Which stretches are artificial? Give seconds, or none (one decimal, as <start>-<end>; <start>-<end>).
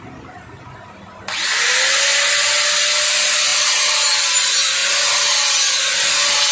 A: none